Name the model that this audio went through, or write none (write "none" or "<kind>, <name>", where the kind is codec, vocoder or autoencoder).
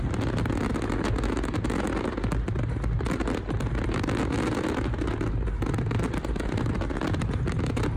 none